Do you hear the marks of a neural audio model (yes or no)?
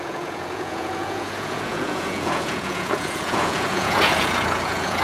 yes